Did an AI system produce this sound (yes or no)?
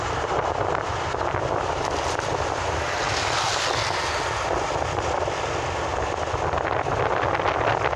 no